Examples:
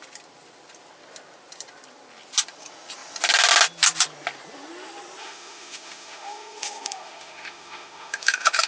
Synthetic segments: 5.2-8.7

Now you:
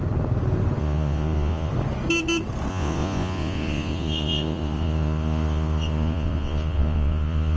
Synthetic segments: 0.8-1.7; 2.7-7.6